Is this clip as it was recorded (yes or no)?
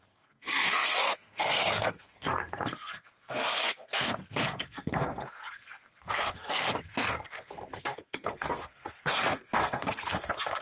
no